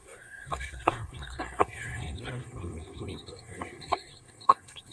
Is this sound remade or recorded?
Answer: remade